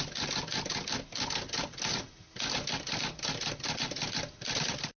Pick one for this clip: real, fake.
real